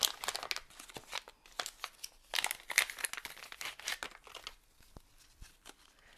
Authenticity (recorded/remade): recorded